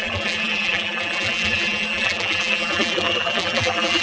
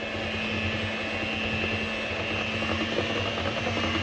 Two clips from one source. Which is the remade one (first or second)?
first